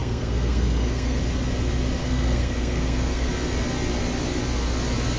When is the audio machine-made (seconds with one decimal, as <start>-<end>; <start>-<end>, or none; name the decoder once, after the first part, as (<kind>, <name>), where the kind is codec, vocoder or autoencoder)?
0.0-1.2 (codec, SNAC); 2.0-3.3